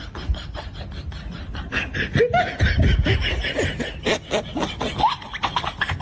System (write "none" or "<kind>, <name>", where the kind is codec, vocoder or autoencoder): none